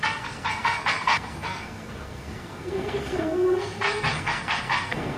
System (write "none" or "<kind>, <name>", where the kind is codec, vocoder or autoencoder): codec, SNAC